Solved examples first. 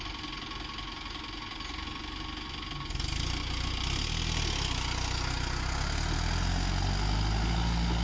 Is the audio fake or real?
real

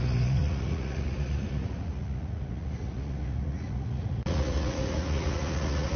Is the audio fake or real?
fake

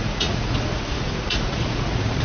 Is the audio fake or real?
fake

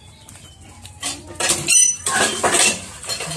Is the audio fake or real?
fake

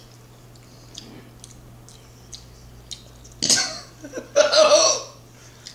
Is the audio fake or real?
real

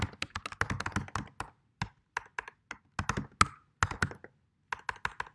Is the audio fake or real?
real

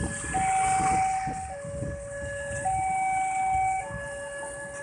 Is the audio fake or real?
real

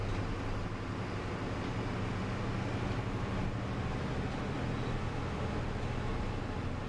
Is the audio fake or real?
real